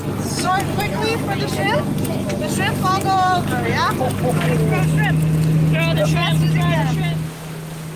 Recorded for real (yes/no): yes